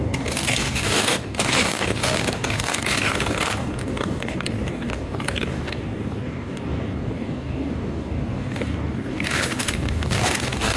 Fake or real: fake